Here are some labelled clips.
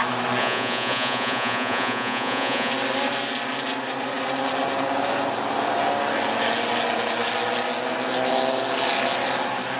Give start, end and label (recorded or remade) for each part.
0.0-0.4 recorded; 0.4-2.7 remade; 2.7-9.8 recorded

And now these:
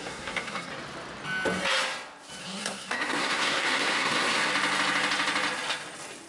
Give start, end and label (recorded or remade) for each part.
0.0-0.7 remade; 0.7-2.4 recorded; 2.4-4.5 remade; 4.5-6.3 recorded

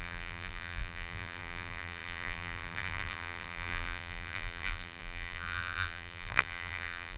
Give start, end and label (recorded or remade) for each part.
0.0-7.2 remade

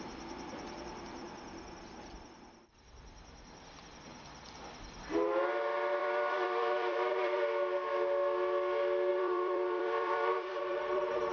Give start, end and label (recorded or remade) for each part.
0.0-6.0 recorded; 6.0-7.4 remade; 7.4-9.1 recorded; 9.1-11.3 remade

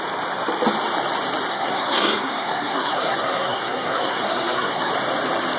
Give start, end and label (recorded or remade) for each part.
0.0-1.5 recorded; 1.5-4.9 remade; 4.9-5.6 recorded